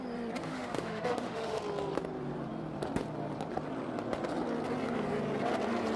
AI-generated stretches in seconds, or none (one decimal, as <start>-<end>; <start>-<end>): 0.4-1.6